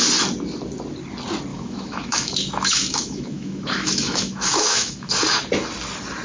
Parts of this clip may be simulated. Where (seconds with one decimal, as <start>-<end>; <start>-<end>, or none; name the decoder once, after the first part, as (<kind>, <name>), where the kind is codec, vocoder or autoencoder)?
1.5-5.1 (autoencoder, DAC-VAE)